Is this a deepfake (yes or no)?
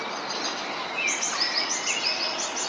no